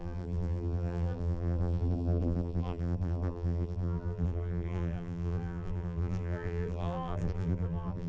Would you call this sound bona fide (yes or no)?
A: no